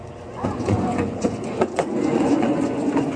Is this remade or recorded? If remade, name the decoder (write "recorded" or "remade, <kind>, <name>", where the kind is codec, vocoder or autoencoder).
remade, vocoder, Vocos